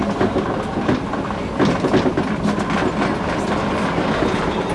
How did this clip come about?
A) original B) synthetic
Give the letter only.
A